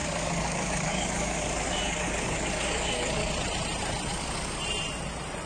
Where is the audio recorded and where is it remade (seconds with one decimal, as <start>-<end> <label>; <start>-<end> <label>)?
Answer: 0.0-3.3 remade; 3.3-4.1 recorded; 4.1-4.6 remade; 4.6-5.5 recorded